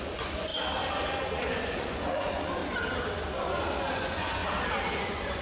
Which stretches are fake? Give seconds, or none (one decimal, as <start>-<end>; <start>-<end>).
0.0-0.5; 1.2-2.6; 3.9-4.4; 5.0-5.4